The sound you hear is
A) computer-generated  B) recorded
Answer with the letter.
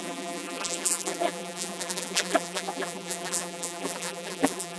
A